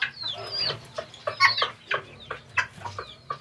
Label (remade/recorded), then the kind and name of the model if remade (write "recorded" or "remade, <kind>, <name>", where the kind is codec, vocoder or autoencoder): recorded